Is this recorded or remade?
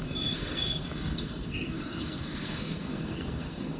remade